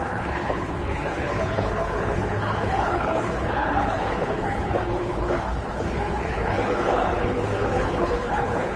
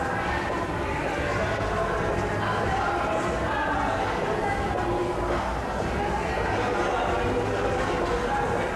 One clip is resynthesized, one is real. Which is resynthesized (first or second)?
first